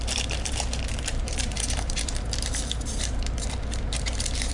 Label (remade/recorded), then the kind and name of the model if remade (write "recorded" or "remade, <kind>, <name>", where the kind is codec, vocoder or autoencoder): remade, vocoder, BigVGAN v2